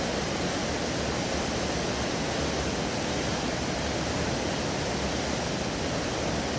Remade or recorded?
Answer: recorded